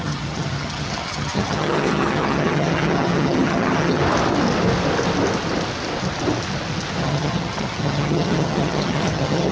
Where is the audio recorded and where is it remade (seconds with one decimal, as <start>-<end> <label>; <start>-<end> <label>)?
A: 0.0-4.0 remade; 4.0-7.0 recorded; 7.0-9.5 remade